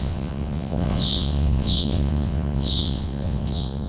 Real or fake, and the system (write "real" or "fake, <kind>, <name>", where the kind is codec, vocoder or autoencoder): fake, vocoder, WaveNeXt